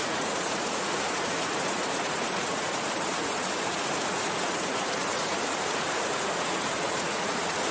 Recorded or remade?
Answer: remade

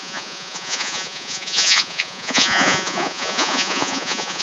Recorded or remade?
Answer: remade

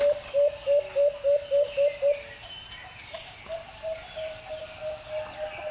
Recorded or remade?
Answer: recorded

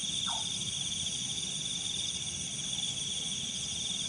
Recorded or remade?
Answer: recorded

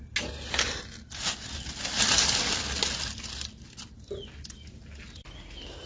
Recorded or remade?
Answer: recorded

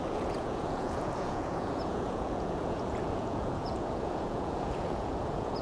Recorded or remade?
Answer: remade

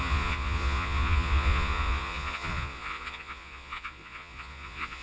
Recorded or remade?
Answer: remade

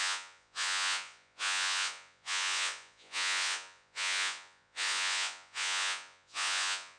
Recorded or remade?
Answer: remade